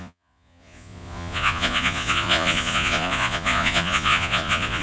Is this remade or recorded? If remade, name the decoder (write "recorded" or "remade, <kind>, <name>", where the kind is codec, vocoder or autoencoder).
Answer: remade, vocoder, Vocos